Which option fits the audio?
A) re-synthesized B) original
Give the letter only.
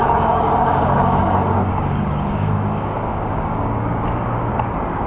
A